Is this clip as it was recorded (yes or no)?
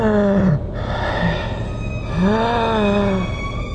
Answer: yes